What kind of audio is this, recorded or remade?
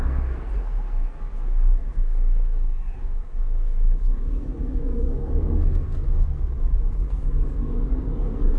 remade